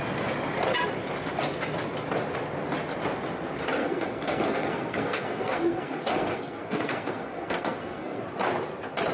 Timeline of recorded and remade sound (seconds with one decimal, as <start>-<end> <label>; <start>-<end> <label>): 0.0-3.8 recorded; 3.8-8.2 remade; 8.2-9.1 recorded